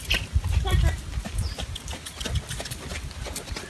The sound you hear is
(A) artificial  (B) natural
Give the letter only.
B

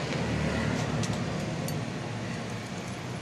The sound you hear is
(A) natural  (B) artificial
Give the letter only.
A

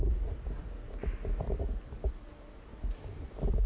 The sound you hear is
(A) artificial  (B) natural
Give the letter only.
B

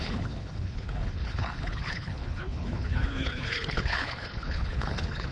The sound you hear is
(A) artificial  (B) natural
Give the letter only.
A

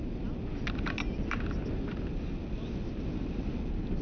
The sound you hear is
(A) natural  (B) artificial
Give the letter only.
A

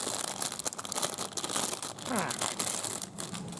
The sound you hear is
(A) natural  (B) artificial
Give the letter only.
A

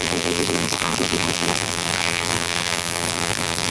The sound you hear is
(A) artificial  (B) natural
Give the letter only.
A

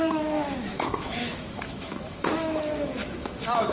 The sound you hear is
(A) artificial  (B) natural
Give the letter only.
A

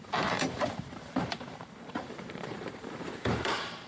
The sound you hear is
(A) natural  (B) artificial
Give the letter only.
B